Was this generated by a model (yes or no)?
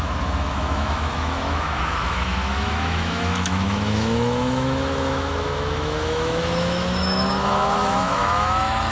yes